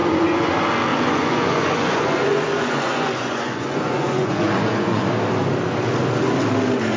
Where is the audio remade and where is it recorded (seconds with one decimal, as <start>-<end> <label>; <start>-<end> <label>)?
0.0-0.5 remade; 0.5-0.9 recorded; 0.9-5.1 remade; 5.1-7.0 recorded